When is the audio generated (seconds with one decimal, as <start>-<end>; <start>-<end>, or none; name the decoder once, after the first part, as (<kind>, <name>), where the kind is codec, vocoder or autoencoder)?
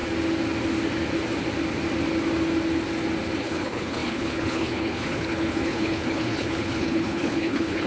3.4-7.9 (codec, HILCodec)